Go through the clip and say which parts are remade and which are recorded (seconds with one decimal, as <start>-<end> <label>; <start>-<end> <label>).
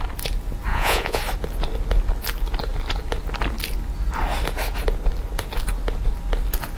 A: 0.0-0.7 recorded; 0.7-1.2 remade; 1.2-6.8 recorded